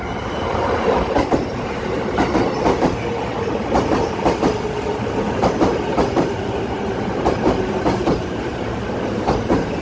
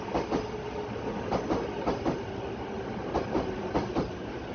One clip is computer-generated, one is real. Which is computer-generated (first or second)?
first